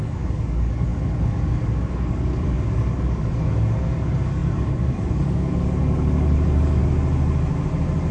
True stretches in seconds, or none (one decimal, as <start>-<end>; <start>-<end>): 6.8-8.1